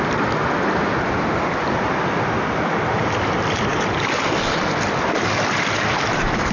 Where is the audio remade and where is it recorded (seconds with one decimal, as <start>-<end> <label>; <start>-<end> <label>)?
0.0-6.5 recorded